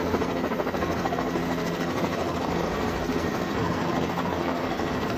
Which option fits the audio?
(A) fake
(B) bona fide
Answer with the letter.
A